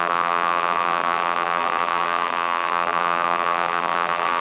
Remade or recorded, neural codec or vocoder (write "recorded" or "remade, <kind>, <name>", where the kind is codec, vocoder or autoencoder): remade, vocoder, BigVGAN v2